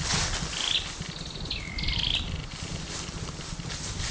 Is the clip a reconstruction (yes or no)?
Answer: no